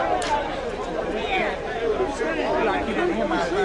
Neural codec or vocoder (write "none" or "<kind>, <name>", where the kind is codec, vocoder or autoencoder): none